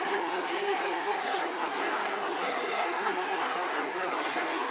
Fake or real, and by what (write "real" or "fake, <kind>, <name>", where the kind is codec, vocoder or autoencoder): fake, codec, SNAC